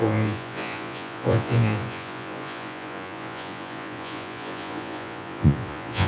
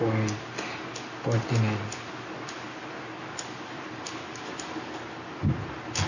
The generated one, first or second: first